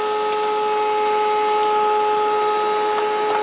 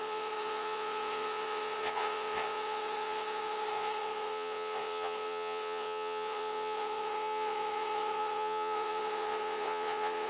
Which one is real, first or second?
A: first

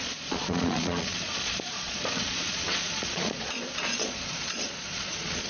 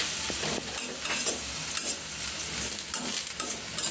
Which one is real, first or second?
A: second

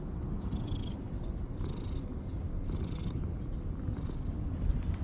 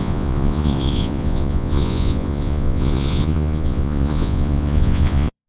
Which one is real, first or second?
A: first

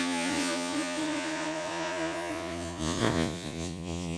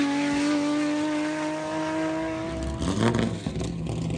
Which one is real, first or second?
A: second